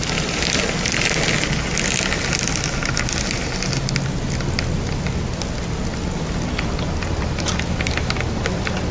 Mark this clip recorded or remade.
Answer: recorded